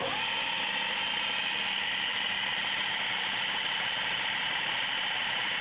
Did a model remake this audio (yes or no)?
no